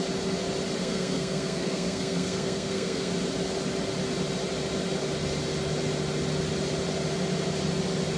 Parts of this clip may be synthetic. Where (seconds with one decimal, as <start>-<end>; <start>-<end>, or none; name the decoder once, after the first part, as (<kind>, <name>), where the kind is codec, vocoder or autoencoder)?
0.8-3.1 (codec, SNAC)